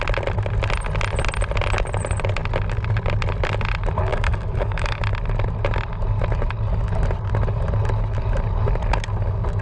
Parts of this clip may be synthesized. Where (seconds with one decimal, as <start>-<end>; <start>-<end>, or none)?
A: 4.1-5.0